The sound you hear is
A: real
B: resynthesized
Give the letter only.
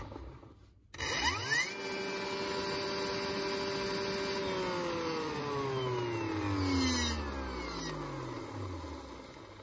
A